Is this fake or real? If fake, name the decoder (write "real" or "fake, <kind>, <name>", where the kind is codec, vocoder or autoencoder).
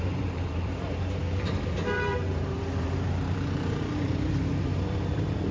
fake, vocoder, BigVGAN v2